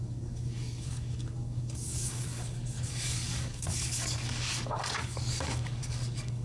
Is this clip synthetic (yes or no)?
yes